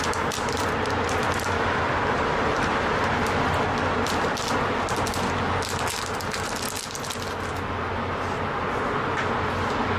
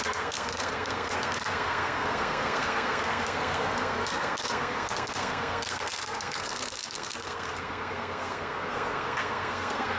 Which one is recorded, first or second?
first